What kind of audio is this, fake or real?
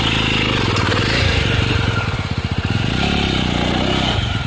real